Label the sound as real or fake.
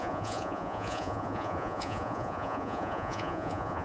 fake